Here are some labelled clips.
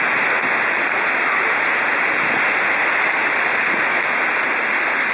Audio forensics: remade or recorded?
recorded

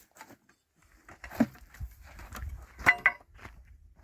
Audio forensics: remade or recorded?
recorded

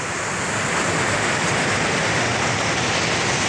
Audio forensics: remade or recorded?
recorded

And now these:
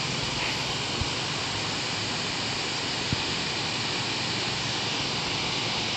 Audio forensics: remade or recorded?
recorded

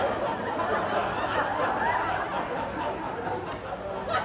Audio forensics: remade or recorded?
recorded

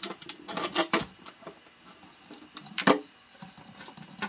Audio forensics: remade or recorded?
recorded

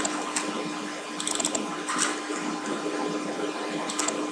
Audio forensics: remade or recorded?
recorded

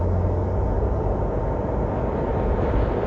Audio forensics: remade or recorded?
recorded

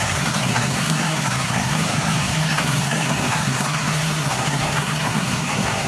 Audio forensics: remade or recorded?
remade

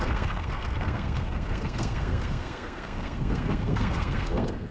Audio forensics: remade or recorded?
remade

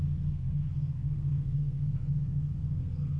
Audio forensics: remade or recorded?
remade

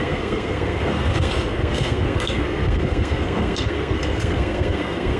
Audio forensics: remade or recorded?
remade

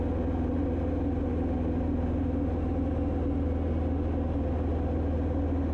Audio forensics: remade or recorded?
recorded